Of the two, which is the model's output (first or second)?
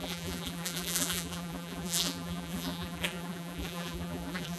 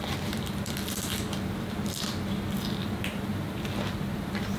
first